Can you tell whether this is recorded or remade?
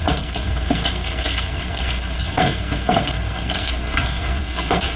remade